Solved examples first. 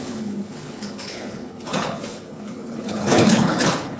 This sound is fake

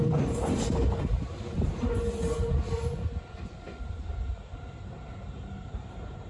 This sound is real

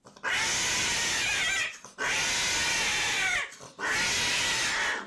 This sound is real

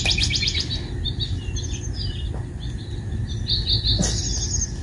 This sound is real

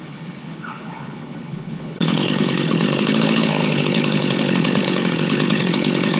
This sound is fake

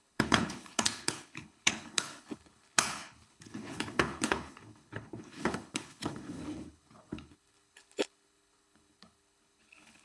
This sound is fake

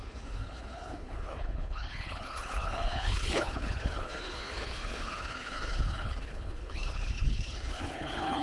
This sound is fake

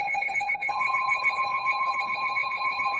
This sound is fake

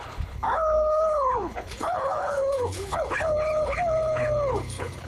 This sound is fake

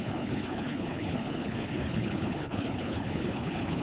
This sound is fake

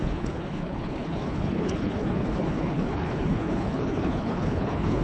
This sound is fake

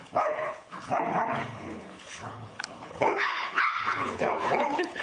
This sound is fake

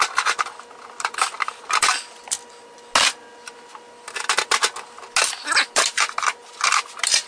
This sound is real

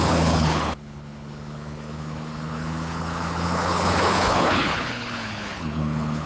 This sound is fake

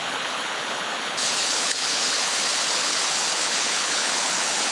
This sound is fake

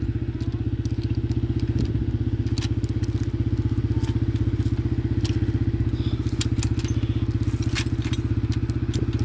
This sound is real